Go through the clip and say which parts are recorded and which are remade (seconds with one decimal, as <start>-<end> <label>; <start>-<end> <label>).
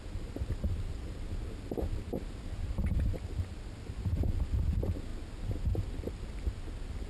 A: 0.0-7.1 recorded